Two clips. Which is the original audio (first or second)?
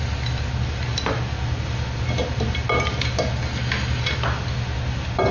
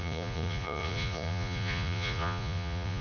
first